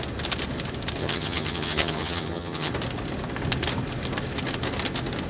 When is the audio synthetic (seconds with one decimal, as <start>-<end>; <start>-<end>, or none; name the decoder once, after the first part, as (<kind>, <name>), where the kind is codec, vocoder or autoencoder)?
1.0-2.7 (vocoder, HiFi-GAN)